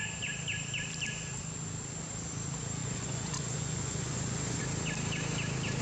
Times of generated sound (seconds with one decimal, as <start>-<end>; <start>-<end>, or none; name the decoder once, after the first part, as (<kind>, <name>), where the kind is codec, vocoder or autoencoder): 2.8-4.6 (vocoder, Vocos)